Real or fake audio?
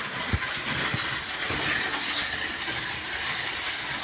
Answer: real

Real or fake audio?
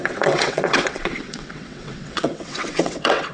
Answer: fake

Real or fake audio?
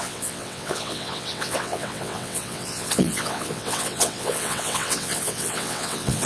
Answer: fake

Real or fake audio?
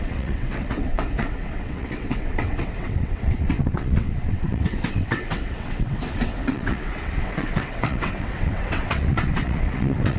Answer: fake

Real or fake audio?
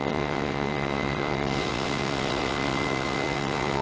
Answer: fake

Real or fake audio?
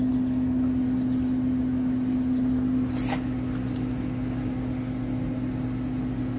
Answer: real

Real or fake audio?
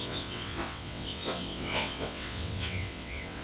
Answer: fake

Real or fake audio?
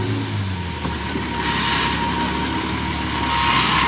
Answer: real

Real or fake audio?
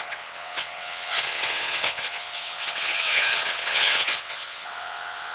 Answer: fake